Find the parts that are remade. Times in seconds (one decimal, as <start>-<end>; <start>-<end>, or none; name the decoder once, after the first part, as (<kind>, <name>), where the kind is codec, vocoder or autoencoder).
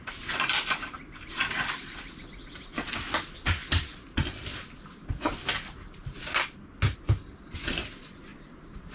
none